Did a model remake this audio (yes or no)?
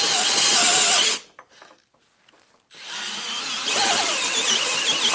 no